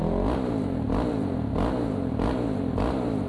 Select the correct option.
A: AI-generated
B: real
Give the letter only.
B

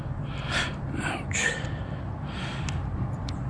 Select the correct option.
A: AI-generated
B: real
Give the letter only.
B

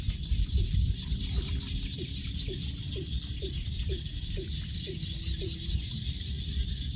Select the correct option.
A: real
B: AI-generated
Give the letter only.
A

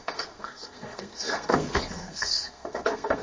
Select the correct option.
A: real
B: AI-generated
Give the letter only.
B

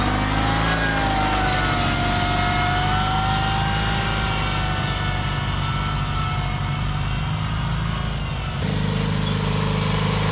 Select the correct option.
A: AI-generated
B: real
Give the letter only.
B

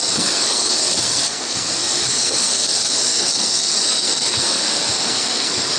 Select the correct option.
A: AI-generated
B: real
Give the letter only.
A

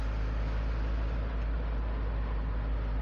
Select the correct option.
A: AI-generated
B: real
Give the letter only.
B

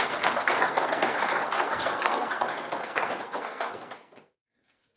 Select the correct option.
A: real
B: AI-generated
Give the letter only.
B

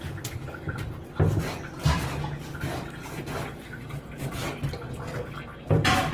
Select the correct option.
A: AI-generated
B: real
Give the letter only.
B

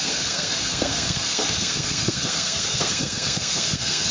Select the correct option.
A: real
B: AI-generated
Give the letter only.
B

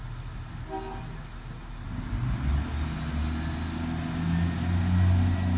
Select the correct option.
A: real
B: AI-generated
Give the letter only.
A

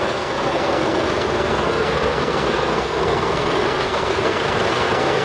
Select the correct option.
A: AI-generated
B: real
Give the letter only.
A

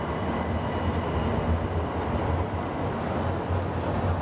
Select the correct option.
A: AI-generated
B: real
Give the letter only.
B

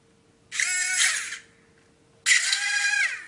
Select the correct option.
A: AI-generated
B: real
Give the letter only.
B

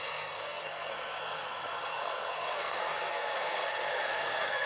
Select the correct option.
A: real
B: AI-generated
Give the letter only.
B